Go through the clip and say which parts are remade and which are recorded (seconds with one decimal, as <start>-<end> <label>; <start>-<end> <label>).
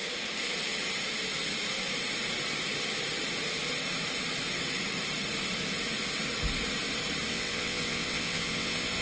0.0-7.3 recorded; 7.3-9.0 remade